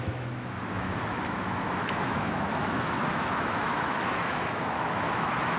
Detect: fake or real fake